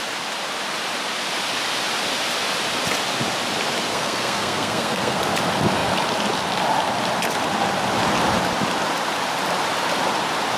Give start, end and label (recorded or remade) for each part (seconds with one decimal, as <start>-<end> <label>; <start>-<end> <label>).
0.0-3.9 recorded; 3.9-5.2 remade; 5.2-10.6 recorded